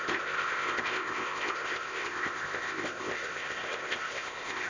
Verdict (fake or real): fake